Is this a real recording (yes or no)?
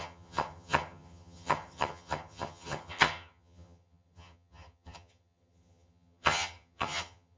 no